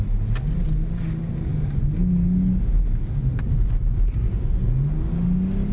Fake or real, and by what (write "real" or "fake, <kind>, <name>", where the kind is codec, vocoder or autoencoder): real